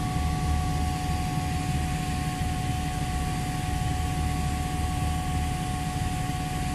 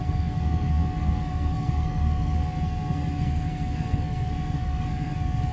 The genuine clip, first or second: first